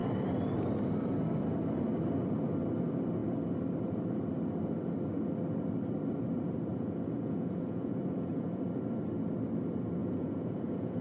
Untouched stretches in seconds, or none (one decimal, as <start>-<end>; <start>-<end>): 0.0-6.7; 8.6-10.0